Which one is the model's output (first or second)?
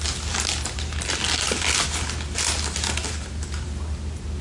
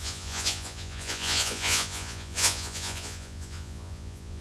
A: second